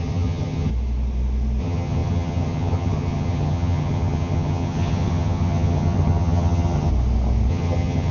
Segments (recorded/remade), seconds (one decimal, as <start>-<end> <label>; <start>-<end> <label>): 0.0-0.7 remade; 0.7-1.6 recorded; 1.6-6.9 remade; 6.9-7.5 recorded; 7.5-8.1 remade